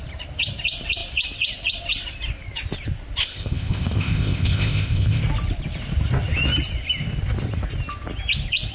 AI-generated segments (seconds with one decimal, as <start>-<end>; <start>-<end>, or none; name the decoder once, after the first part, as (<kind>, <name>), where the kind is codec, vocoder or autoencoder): 3.2-5.2 (codec, ZipCodec)